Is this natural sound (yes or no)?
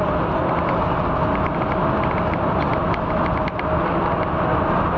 yes